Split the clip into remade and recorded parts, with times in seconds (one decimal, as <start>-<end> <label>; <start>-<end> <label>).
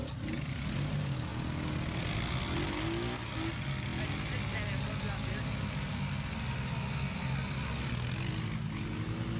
0.0-9.4 recorded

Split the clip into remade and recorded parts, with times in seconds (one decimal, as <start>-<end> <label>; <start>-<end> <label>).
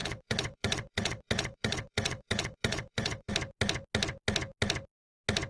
0.0-3.3 remade; 3.3-5.5 recorded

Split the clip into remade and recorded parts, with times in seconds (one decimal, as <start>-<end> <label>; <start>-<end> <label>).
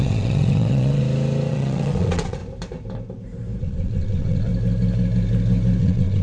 0.0-1.0 remade; 1.0-1.5 recorded; 1.5-2.4 remade; 2.4-3.6 recorded; 3.6-4.5 remade; 4.5-5.8 recorded; 5.8-6.2 remade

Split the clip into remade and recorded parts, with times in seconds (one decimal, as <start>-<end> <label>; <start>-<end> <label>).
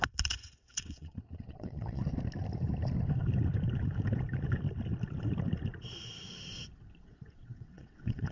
0.0-2.0 remade; 2.0-7.0 recorded; 7.0-8.3 remade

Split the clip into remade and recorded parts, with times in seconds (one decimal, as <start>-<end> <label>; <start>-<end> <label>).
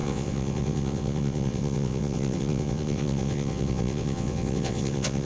0.0-5.3 remade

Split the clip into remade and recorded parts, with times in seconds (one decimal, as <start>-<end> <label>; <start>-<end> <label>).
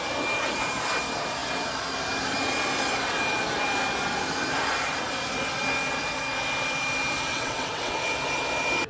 0.0-7.3 recorded; 7.3-7.9 remade; 7.9-8.9 recorded